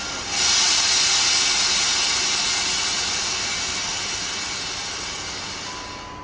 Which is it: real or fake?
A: real